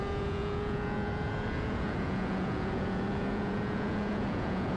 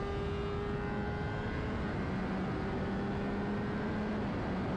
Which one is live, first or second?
second